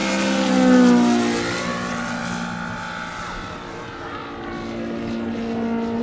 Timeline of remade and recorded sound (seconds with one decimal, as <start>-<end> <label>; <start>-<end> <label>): 0.0-1.6 recorded; 1.6-2.2 remade; 2.2-3.2 recorded; 3.2-4.2 remade; 4.2-6.0 recorded